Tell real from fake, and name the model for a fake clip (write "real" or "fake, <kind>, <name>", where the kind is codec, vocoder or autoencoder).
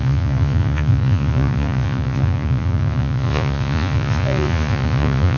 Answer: fake, vocoder, Vocos